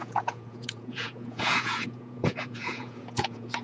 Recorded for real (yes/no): no